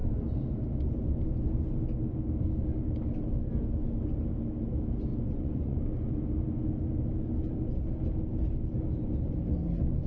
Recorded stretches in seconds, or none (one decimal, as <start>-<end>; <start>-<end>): 0.0-5.1; 6.1-10.1